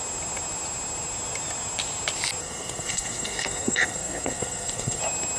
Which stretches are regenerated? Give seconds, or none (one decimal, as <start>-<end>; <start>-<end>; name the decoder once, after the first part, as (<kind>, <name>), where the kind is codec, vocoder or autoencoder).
2.4-5.0 (codec, SNAC)